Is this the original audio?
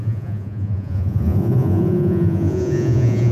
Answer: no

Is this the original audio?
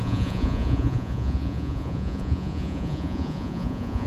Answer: no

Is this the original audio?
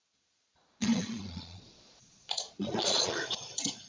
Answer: no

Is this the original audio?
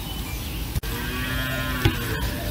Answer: yes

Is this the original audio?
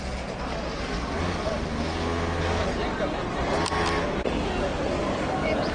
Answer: yes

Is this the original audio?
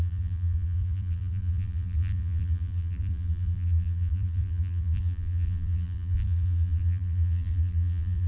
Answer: no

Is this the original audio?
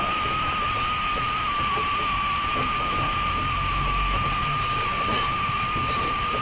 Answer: yes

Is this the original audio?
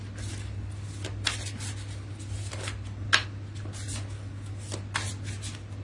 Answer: yes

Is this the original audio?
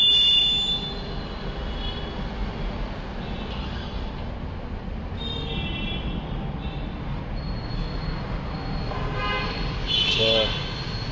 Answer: yes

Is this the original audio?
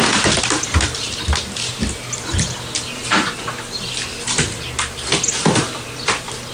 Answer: yes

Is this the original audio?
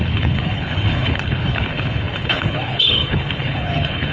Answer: no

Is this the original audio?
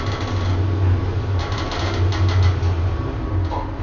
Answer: yes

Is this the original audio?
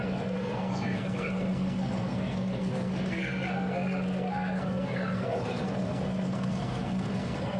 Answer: no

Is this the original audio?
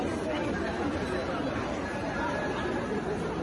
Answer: yes